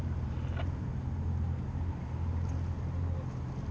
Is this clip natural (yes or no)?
yes